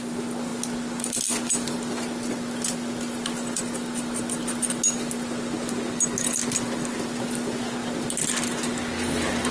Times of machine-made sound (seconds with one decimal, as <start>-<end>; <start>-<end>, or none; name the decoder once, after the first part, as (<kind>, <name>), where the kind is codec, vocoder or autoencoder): none